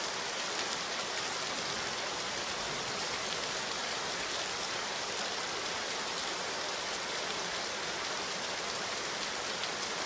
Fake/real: fake